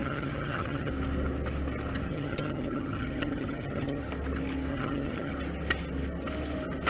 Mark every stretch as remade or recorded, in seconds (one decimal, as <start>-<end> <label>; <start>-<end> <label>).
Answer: 0.0-0.9 remade; 0.9-2.0 recorded; 2.0-4.0 remade; 4.0-4.7 recorded; 4.7-5.3 remade; 5.3-6.9 recorded